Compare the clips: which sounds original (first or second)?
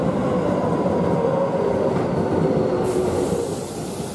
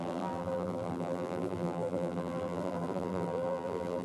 first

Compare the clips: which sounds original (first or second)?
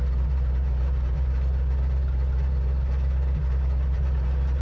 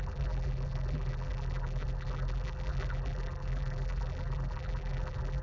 first